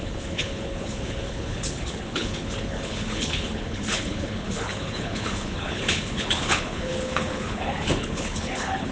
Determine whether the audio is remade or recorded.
remade